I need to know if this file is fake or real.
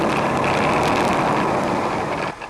real